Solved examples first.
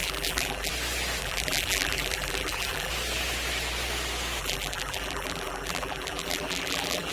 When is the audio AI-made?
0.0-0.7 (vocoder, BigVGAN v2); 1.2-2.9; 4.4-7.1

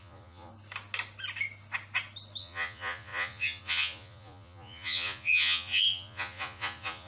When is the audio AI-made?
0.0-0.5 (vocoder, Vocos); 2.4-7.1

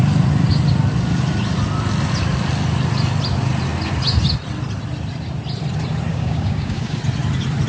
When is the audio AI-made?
6.1-7.0 (codec, DAC)